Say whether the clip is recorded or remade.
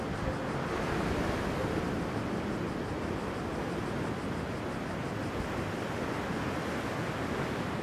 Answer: recorded